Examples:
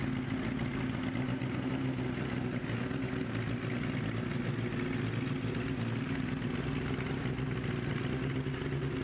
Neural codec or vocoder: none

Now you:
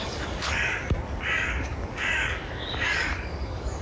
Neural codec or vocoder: codec, DAC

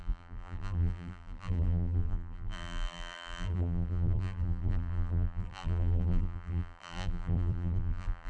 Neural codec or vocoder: vocoder, BigVGAN v2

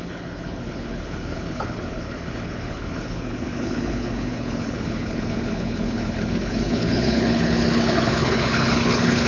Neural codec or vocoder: codec, HILCodec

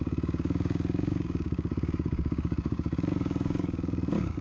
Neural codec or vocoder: codec, DAC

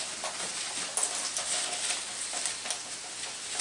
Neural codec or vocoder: none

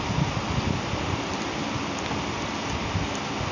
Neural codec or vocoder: none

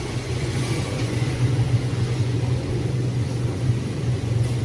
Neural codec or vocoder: vocoder, Vocos